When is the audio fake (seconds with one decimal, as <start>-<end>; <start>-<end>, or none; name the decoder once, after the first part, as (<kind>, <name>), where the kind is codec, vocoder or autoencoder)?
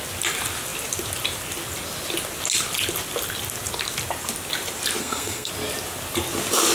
5.0-5.5 (codec, SNAC)